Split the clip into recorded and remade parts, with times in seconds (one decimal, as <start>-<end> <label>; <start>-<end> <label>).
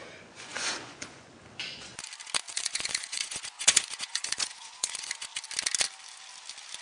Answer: 0.0-1.9 remade; 1.9-2.5 recorded; 2.5-5.3 remade; 5.3-6.8 recorded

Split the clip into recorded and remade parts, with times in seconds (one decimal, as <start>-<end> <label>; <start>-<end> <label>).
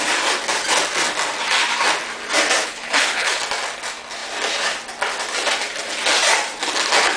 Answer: 0.0-2.6 recorded; 2.6-3.4 remade; 3.4-7.2 recorded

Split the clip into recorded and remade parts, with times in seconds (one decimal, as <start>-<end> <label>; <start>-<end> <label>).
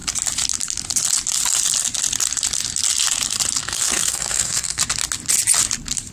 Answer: 0.0-3.6 recorded; 3.6-4.8 remade; 4.8-6.1 recorded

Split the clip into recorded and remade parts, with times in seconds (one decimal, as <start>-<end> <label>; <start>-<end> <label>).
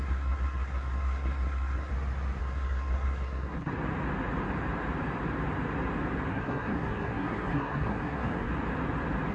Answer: 0.0-1.9 remade; 1.9-2.4 recorded; 2.4-3.7 remade; 3.7-6.3 recorded; 6.3-8.5 remade; 8.5-9.3 recorded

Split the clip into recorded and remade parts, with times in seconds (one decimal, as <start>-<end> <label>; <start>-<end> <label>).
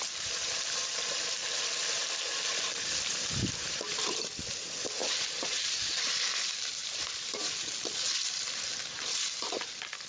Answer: 0.0-10.1 recorded